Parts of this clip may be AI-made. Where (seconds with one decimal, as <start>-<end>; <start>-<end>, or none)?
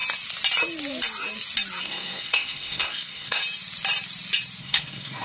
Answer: 1.8-3.4; 4.6-5.2